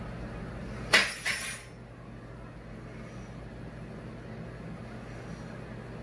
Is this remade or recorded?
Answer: recorded